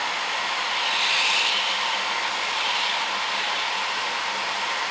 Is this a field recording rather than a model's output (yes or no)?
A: yes